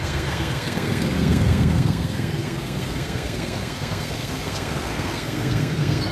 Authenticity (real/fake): fake